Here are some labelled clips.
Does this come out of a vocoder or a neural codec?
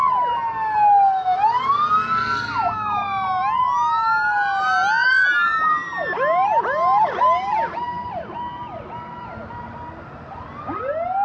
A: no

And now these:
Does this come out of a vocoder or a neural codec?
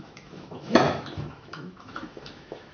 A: yes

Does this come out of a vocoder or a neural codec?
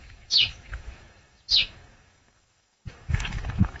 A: yes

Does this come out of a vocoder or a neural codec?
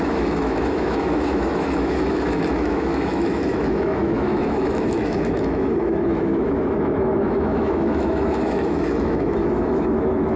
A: yes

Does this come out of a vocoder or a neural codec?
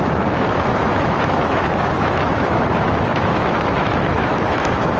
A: yes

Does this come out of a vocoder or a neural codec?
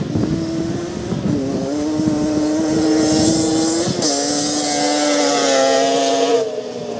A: no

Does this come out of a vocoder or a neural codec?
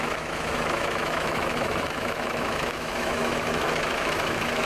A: yes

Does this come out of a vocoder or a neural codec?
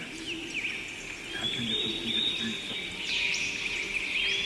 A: no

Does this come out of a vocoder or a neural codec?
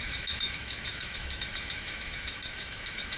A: yes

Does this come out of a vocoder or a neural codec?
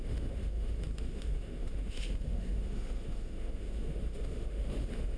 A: yes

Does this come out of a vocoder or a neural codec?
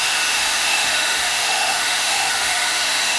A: yes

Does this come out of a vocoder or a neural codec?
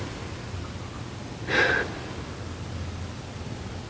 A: no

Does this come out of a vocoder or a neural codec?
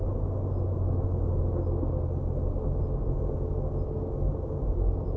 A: no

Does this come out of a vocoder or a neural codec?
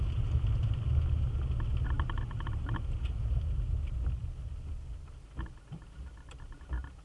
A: no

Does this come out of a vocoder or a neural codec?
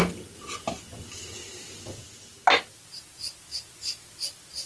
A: no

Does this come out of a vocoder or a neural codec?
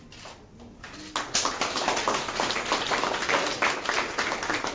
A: no